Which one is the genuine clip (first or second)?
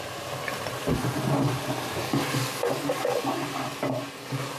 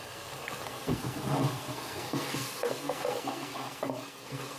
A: first